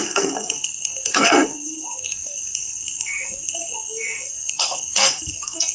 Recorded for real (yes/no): no